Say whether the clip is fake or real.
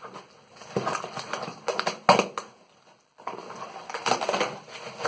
real